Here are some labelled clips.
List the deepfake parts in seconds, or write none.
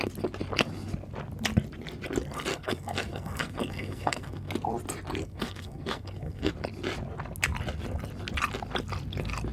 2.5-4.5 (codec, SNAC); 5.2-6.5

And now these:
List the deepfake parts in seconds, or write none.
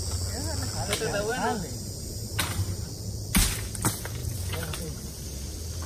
1.3-2.8 (vocoder, BigVGAN v2); 4.2-5.4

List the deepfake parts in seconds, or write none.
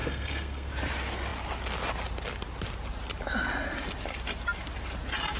0.0-0.7 (codec, SNAC)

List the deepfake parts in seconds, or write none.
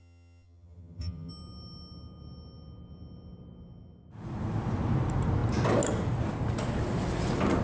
0.0-1.3 (vocoder, HiFi-GAN)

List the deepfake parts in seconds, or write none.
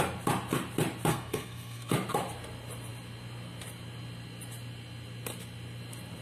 1.1-1.9 (codec, SNAC)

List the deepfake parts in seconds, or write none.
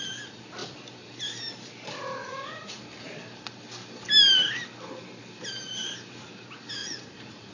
2.2-2.8 (vocoder, Vocos); 6.8-7.5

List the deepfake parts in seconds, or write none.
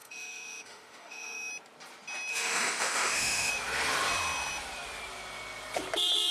0.0-1.5 (autoencoder, DAC-VAE); 2.3-3.5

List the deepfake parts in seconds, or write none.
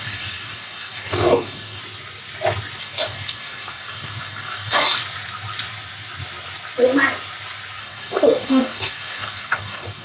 0.0-1.8 (codec, DAC); 2.8-5.0; 7.8-10.0